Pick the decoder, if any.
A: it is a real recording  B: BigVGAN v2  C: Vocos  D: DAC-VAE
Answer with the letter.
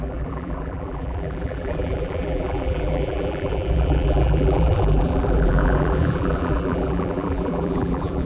B